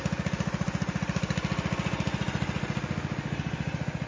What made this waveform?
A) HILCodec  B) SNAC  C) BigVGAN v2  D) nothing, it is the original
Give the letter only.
D